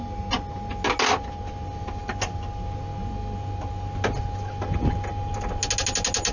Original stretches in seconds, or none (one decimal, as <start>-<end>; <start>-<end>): 0.0-6.3